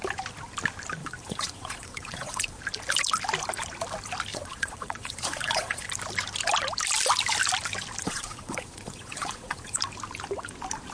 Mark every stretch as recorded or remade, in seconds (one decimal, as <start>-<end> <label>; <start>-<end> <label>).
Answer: 0.0-1.0 recorded; 1.0-2.6 remade; 2.6-4.3 recorded; 4.3-5.9 remade; 5.9-8.0 recorded; 8.0-9.8 remade; 9.8-10.9 recorded

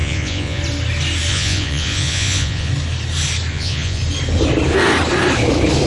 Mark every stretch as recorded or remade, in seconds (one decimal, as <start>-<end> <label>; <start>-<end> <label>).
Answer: 0.0-0.6 remade; 0.6-1.3 recorded; 1.3-2.7 remade; 2.7-3.5 recorded; 3.5-4.0 remade; 4.0-5.9 recorded

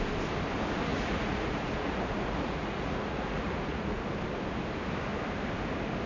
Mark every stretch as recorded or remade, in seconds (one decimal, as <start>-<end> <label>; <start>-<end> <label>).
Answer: 0.0-0.9 recorded; 0.9-4.0 remade; 4.0-6.1 recorded

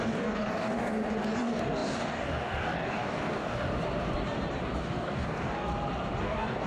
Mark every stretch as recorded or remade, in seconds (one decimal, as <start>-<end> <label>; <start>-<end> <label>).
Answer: 0.0-0.9 remade; 0.9-1.4 recorded; 1.4-3.7 remade; 3.7-4.8 recorded; 4.8-5.7 remade; 5.7-6.2 recorded; 6.2-6.7 remade

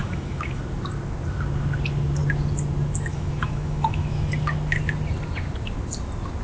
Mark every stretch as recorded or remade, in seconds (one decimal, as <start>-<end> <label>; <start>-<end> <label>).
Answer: 0.0-0.6 remade; 0.6-3.1 recorded; 3.1-4.3 remade; 4.3-6.4 recorded